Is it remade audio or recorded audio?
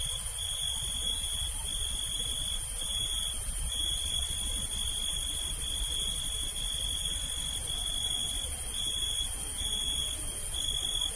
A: recorded